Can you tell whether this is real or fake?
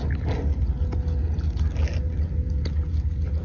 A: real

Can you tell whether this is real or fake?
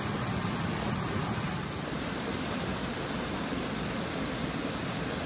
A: real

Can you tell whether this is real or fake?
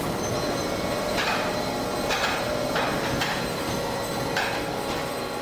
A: real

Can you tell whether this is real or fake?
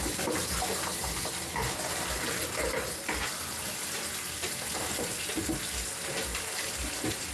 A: real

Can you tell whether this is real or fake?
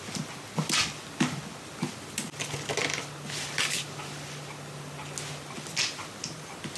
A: real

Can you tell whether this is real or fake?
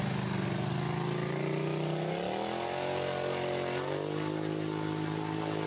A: real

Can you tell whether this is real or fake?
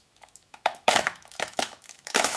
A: fake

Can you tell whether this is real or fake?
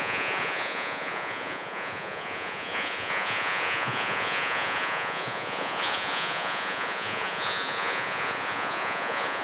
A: fake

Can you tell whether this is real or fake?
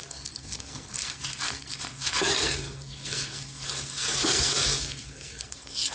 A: fake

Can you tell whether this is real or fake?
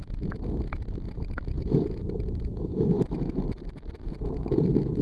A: fake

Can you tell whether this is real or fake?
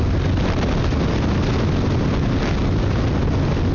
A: real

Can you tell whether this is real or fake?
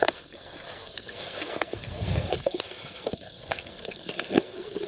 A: fake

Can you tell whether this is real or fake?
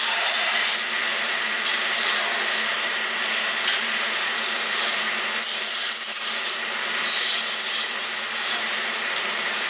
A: fake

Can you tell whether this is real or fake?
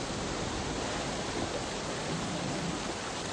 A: fake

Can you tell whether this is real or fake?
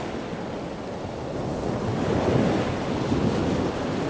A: real